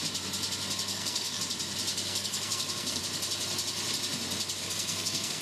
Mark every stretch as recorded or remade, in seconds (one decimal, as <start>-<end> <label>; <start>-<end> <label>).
0.0-0.9 recorded; 0.9-1.4 remade; 1.4-1.9 recorded; 1.9-3.0 remade; 3.0-4.6 recorded; 4.6-5.4 remade